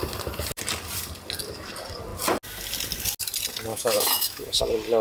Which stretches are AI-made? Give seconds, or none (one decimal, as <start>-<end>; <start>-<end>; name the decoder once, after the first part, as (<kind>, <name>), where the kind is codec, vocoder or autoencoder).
3.7-4.6 (autoencoder, DAC-VAE)